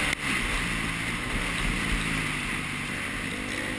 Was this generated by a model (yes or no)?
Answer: no